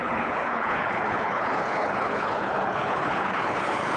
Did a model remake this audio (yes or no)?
yes